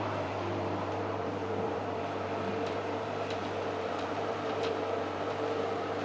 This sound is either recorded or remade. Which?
remade